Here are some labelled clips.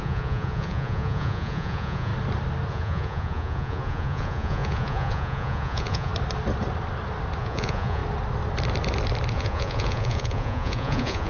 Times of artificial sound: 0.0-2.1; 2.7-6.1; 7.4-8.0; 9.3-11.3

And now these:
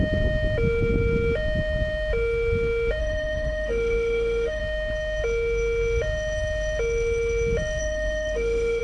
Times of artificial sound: 3.0-4.6; 7.8-8.8

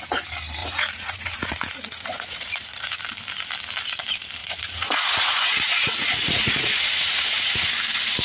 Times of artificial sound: 0.6-2.9; 4.4-7.7

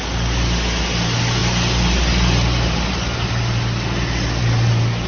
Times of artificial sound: none